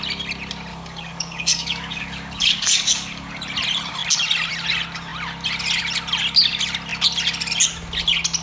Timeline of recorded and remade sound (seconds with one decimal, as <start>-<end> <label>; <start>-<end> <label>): 0.0-0.7 recorded; 0.7-3.3 remade; 3.3-8.4 recorded